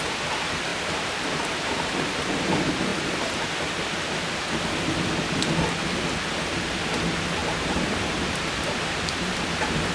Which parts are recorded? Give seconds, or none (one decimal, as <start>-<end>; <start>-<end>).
0.0-0.7; 1.9-7.4; 9.4-9.9